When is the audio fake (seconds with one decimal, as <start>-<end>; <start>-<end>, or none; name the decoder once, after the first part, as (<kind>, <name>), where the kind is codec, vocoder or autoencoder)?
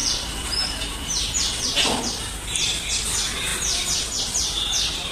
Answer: 0.0-1.8 (vocoder, BigVGAN v2); 3.5-5.1